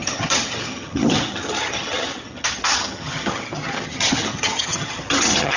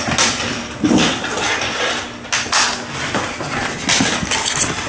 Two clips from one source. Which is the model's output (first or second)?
first